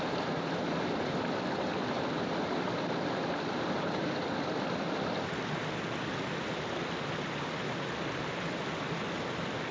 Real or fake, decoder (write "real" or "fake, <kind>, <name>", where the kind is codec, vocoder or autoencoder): real